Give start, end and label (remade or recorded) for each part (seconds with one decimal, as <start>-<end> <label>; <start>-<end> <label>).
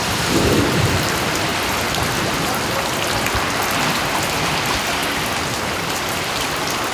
0.0-1.5 remade; 1.5-4.2 recorded; 4.2-5.0 remade; 5.0-5.6 recorded; 5.6-6.9 remade